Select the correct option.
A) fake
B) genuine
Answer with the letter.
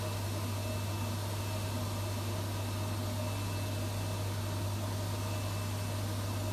B